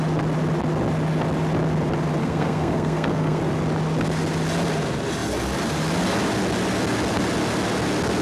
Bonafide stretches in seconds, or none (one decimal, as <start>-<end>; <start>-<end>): 0.0-2.2; 3.4-8.2